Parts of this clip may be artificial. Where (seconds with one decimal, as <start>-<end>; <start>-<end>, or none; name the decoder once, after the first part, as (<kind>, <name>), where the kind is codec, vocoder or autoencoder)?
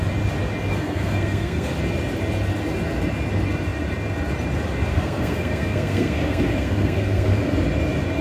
0.7-1.7 (codec, SNAC); 4.9-7.4